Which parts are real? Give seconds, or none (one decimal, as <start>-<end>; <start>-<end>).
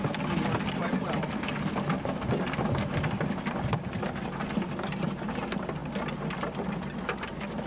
0.0-7.7